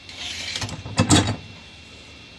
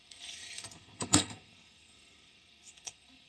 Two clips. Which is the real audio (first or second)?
first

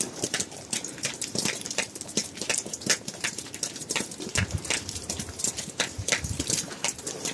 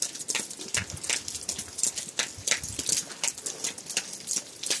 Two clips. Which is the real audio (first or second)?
second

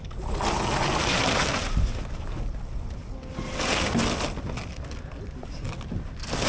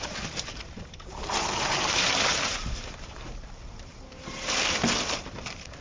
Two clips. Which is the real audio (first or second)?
first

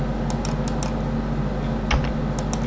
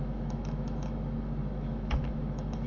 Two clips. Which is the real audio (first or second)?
first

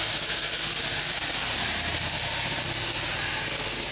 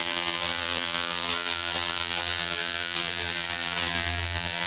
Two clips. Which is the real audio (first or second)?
first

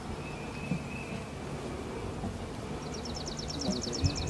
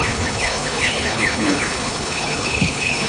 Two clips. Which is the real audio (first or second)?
first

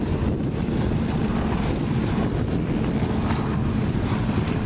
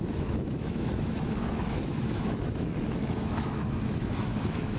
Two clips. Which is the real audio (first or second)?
first